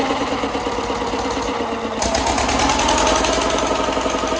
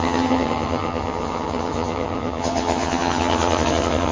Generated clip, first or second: second